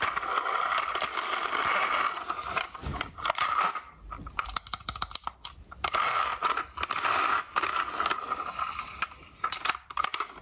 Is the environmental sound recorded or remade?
recorded